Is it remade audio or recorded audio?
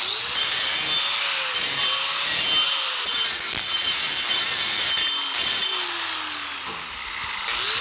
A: recorded